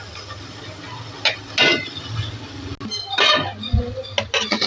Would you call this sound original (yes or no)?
yes